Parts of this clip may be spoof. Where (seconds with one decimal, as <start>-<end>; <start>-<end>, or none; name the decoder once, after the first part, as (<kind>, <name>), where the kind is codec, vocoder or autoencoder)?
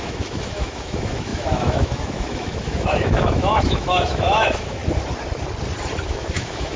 0.0-4.8 (autoencoder, DAC-VAE); 6.1-6.8